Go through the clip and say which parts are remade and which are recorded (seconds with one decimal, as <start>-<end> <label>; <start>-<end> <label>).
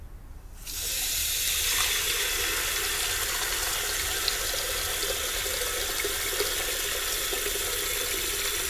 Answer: 0.0-8.7 recorded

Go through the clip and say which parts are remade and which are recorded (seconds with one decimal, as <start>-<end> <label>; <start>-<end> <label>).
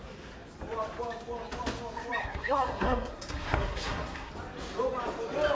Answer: 0.0-2.2 recorded; 2.2-4.3 remade; 4.3-5.5 recorded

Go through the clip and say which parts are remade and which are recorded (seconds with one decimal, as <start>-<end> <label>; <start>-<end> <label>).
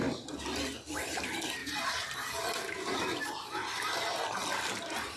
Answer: 0.0-1.6 recorded; 1.6-3.5 remade; 3.5-5.2 recorded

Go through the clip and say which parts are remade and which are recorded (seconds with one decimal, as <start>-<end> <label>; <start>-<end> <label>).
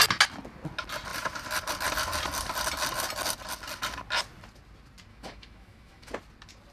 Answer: 0.0-5.1 recorded; 5.1-6.1 remade; 6.1-6.7 recorded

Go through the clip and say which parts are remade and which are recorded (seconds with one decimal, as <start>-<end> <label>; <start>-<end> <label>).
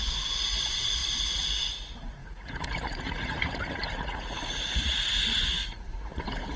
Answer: 0.0-6.6 remade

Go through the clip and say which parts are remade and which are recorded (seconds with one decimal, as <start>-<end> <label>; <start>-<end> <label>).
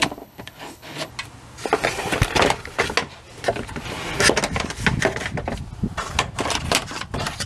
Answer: 0.0-1.1 remade; 1.1-7.5 recorded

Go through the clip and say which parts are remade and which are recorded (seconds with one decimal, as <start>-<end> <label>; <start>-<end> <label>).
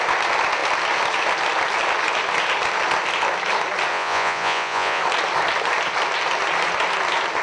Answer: 0.0-3.9 recorded; 3.9-5.0 remade; 5.0-7.4 recorded